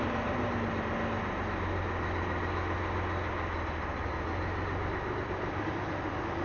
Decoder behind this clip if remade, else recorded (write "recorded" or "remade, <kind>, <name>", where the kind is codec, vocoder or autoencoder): recorded